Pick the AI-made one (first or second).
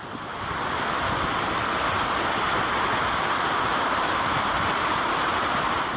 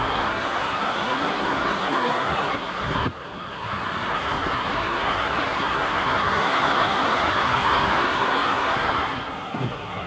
second